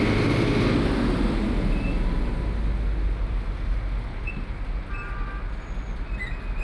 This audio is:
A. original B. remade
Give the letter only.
A